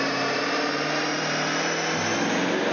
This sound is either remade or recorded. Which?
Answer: remade